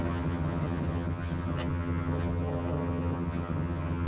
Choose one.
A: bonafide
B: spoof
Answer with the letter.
B